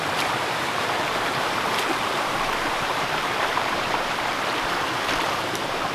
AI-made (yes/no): yes